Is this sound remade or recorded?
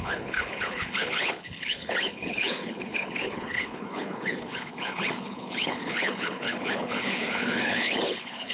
remade